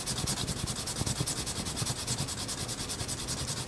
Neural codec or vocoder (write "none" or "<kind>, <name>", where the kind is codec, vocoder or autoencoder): none